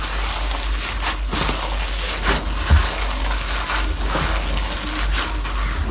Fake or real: real